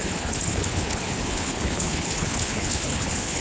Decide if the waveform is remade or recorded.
remade